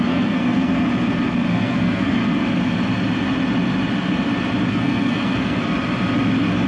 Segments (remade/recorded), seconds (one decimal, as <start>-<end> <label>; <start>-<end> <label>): 0.0-0.7 remade; 0.7-1.5 recorded; 1.5-2.2 remade; 2.2-4.7 recorded; 4.7-5.6 remade; 5.6-6.7 recorded